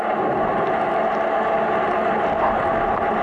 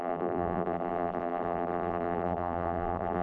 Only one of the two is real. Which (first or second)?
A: first